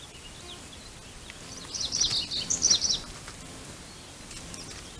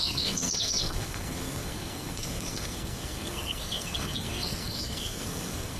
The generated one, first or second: second